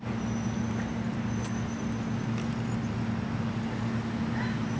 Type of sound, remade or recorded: recorded